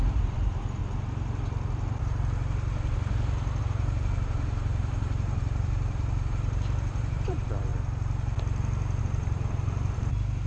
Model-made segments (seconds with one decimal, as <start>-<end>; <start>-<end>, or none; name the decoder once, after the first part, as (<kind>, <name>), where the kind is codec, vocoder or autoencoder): 0.0-0.8 (vocoder, BigVGAN v2); 3.6-7.7; 9.0-10.5